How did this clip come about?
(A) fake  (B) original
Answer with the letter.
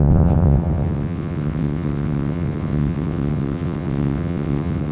A